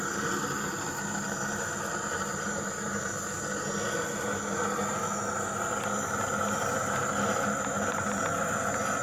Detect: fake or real real